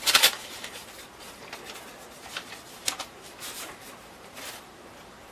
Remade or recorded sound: remade